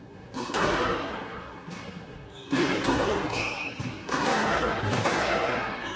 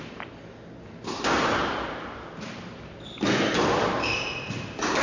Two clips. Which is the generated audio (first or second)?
first